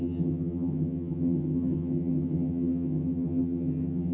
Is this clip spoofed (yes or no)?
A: yes